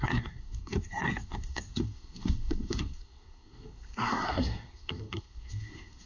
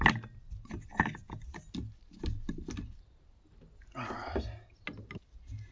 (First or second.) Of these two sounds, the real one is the second